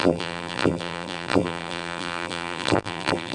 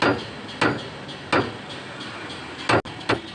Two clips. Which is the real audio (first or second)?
second